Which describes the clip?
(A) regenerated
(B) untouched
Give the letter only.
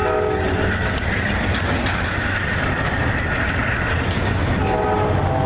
B